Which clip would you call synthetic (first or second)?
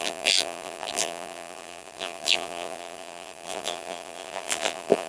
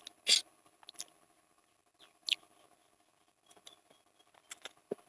first